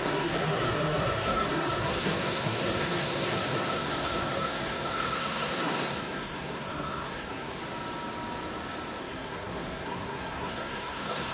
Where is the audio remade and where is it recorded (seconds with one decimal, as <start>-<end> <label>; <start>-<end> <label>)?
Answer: 0.0-7.6 remade; 7.6-9.0 recorded; 9.0-11.3 remade